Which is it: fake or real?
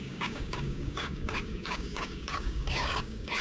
fake